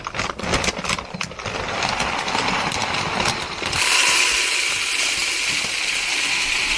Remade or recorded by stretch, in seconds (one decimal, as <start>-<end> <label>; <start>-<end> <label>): 0.0-6.8 recorded